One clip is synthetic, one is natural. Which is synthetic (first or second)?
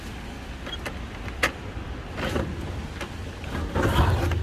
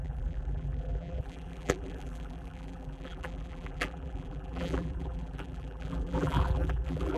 second